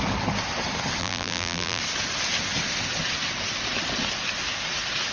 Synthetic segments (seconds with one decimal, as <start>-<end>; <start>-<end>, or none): 1.0-1.8